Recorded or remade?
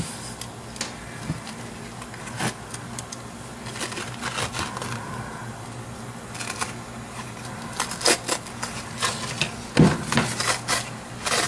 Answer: recorded